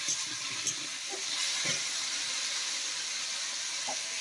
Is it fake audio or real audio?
real